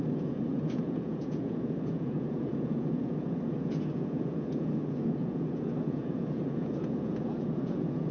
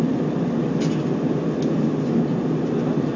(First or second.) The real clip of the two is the second